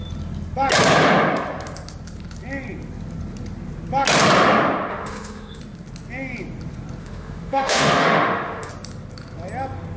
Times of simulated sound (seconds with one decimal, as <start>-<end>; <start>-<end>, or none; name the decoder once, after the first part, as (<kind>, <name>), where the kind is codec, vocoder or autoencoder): 4.9-5.6 (autoencoder, DAC-VAE); 7.0-8.7